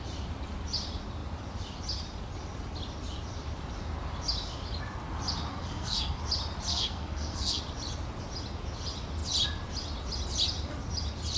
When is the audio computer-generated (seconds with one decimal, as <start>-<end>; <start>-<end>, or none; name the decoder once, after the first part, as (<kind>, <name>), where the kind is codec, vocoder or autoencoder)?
5.5-6.2 (codec, SNAC); 6.7-7.6